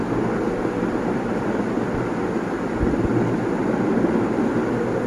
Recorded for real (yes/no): yes